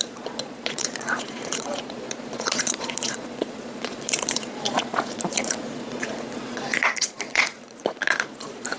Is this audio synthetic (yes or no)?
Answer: yes